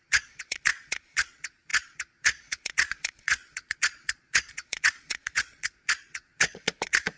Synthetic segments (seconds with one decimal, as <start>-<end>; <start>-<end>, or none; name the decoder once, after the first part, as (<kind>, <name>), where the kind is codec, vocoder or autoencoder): 0.0-7.2 (vocoder, Vocos)